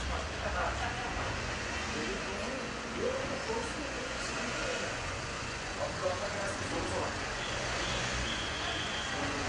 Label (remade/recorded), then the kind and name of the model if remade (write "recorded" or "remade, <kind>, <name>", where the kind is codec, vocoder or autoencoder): remade, vocoder, Vocos